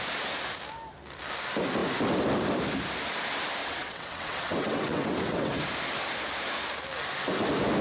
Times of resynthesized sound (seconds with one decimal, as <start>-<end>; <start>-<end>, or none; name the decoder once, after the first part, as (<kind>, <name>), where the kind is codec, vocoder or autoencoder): 3.6-5.6 (vocoder, WaveNeXt)